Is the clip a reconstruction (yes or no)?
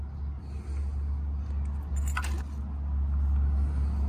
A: no